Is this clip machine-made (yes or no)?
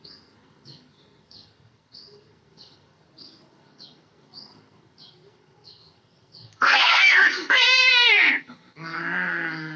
yes